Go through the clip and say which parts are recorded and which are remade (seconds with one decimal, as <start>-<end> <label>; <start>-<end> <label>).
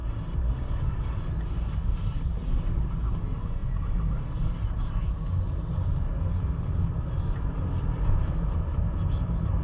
0.0-9.6 recorded